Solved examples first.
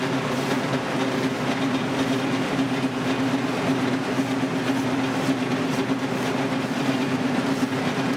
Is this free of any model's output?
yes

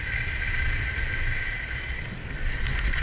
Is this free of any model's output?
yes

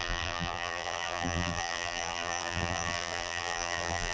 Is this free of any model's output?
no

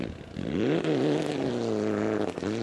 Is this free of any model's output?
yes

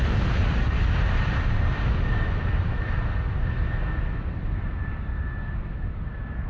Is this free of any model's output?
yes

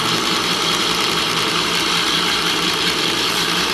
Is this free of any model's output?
no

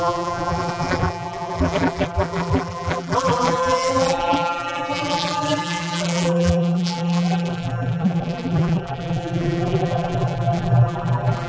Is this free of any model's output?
no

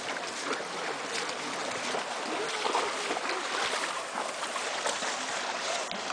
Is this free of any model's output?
yes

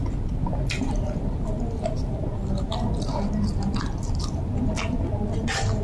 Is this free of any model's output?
yes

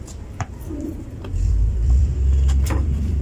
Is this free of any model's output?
no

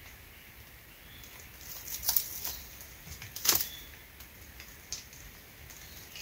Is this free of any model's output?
yes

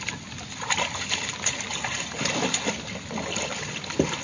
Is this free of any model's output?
yes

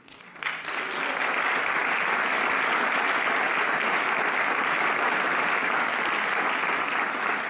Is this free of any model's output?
yes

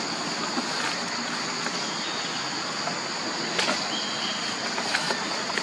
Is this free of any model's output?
yes